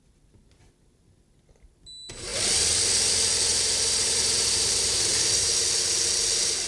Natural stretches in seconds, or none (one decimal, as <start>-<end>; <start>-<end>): 0.0-3.5; 5.6-6.7